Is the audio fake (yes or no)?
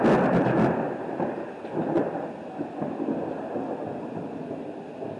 no